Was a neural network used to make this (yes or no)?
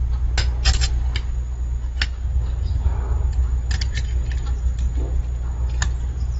no